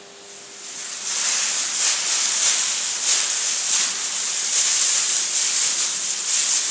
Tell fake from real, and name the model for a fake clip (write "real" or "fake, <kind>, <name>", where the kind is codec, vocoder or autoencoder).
real